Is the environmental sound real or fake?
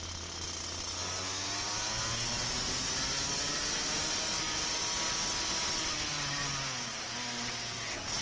real